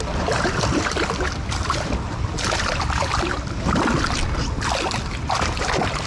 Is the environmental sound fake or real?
real